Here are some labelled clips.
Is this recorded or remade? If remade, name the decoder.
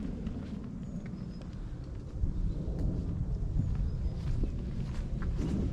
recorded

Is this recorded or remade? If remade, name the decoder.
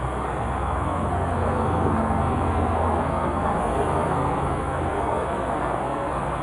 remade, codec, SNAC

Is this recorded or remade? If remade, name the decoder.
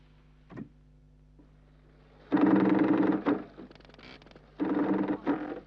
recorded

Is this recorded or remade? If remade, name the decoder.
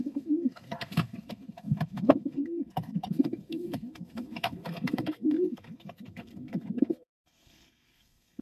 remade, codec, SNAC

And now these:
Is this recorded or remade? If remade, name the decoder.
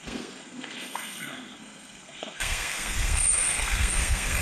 remade, codec, SNAC